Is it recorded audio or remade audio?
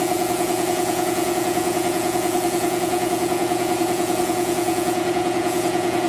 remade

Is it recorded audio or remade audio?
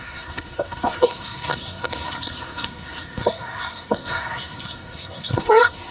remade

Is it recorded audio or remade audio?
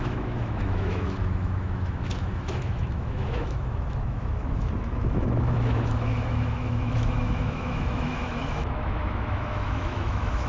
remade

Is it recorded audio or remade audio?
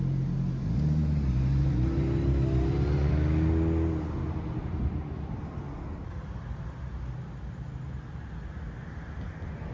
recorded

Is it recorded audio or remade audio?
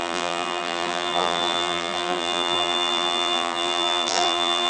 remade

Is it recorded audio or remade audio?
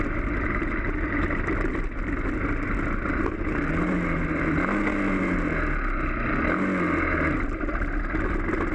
recorded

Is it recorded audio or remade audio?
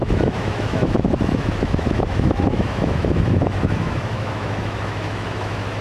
remade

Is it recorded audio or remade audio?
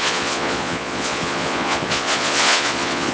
remade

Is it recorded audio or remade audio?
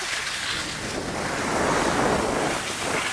recorded